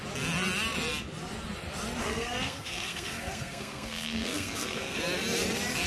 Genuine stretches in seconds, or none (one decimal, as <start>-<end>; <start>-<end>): 0.0-2.0; 5.0-5.9